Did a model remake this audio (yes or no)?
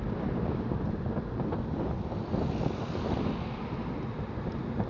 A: no